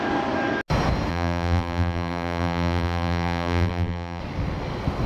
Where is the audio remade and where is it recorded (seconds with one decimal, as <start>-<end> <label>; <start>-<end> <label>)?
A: 0.0-1.1 recorded; 1.1-4.2 remade; 4.2-5.1 recorded